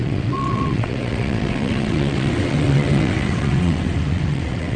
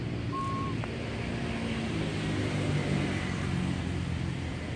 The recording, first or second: second